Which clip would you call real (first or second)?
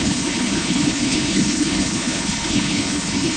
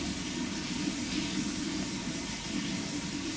second